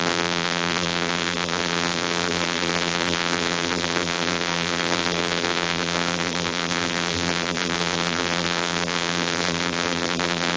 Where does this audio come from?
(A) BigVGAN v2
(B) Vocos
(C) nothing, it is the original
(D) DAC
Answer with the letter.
A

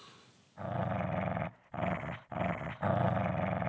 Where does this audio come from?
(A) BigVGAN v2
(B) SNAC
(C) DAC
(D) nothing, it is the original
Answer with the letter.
D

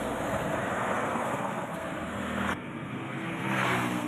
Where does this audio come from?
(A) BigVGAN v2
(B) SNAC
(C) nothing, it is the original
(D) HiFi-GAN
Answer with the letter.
B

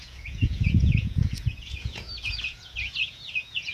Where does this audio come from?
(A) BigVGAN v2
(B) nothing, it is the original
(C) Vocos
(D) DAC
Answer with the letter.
C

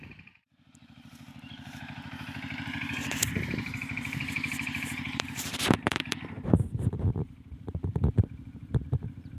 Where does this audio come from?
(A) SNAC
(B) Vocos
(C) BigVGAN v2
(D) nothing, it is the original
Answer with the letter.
C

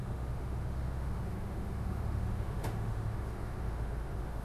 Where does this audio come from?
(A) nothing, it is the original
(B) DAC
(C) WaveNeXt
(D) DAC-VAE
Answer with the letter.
D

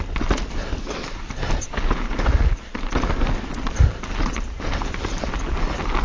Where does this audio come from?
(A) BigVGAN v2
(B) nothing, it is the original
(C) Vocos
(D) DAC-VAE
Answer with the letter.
B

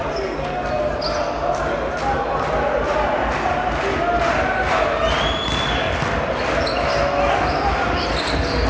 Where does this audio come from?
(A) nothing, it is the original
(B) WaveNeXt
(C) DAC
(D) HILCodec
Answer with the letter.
A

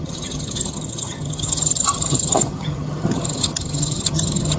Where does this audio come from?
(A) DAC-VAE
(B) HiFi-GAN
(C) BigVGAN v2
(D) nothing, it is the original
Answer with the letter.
B